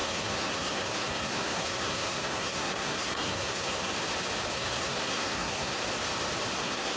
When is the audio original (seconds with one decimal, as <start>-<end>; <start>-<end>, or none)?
3.9-4.5; 5.8-6.6